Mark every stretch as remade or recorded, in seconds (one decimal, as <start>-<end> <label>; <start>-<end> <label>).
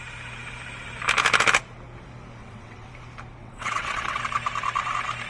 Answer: 0.0-2.4 recorded; 2.4-2.9 remade; 2.9-3.4 recorded; 3.4-4.2 remade; 4.2-5.3 recorded